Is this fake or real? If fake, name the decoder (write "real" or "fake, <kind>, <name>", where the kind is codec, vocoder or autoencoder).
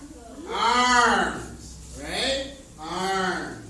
real